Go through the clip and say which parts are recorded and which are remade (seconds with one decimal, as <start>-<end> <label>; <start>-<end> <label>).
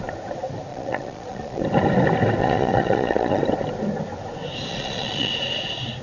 0.0-0.7 recorded; 0.7-1.6 remade; 1.6-2.4 recorded; 2.4-3.4 remade; 3.4-4.7 recorded; 4.7-5.3 remade; 5.3-6.0 recorded